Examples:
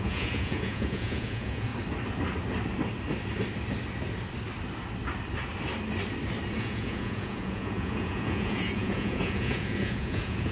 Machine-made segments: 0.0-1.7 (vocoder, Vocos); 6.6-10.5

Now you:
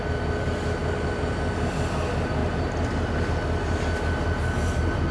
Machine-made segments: none

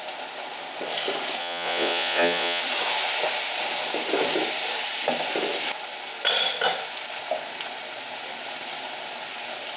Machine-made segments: 1.4-2.6 (vocoder, Vocos)